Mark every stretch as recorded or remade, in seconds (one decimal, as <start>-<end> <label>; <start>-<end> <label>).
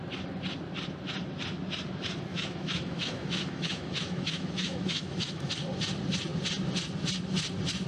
0.0-2.3 recorded; 2.3-5.5 remade; 5.5-7.9 recorded